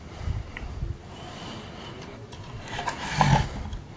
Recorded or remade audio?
recorded